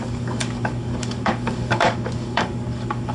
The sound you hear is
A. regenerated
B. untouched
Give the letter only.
A